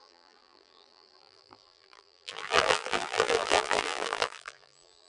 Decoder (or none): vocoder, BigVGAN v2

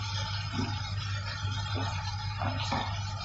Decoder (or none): none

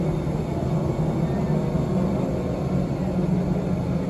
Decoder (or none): none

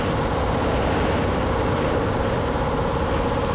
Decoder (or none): none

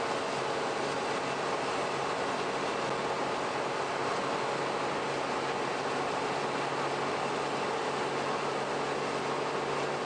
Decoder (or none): none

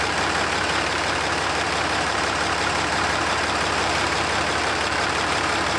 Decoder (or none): vocoder, BigVGAN v2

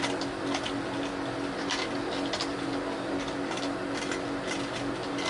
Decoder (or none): none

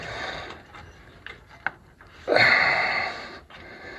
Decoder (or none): none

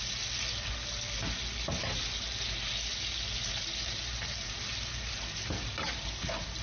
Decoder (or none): none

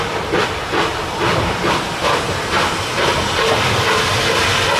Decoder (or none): vocoder, BigVGAN v2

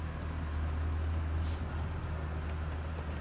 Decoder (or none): none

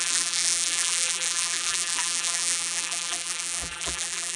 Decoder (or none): vocoder, BigVGAN v2